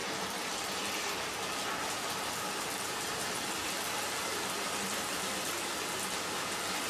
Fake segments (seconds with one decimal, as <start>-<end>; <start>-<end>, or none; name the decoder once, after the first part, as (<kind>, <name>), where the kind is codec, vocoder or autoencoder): none

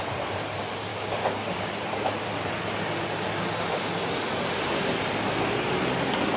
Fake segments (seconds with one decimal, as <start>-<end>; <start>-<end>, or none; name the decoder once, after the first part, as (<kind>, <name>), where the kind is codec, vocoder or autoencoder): 0.9-1.7 (codec, DAC)

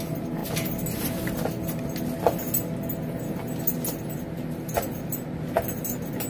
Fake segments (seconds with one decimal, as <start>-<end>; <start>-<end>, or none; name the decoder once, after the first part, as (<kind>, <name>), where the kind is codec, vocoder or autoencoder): none

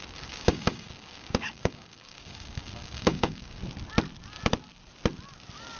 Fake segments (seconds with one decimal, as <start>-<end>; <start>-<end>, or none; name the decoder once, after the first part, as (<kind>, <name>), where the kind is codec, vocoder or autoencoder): 0.0-3.6 (codec, DAC)

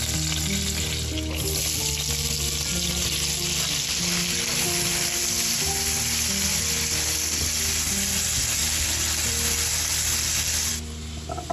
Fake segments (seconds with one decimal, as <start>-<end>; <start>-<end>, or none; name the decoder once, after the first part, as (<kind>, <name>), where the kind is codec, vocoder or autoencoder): none

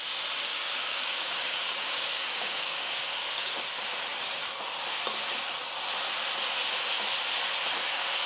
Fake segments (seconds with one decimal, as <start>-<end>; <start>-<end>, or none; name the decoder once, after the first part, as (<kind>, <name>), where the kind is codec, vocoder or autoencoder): 0.5-3.5 (codec, DAC)